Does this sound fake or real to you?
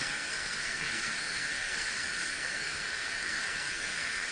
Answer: fake